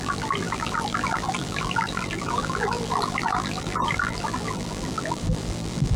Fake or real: fake